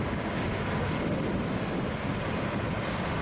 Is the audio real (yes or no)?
yes